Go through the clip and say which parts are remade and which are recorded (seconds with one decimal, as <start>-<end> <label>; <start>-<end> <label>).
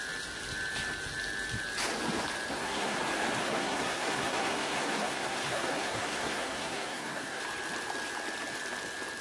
0.0-2.5 recorded; 2.5-3.0 remade; 3.0-3.4 recorded; 3.4-7.4 remade; 7.4-9.2 recorded